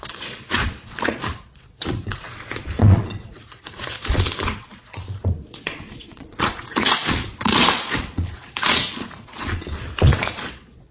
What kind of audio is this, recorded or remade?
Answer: remade